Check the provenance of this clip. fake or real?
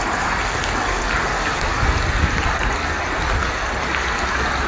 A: real